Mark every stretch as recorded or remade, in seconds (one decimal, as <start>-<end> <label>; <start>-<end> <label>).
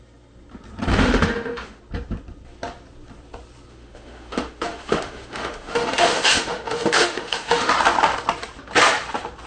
0.0-0.9 recorded; 0.9-1.8 remade; 1.8-3.7 recorded; 3.7-7.7 remade; 7.7-9.5 recorded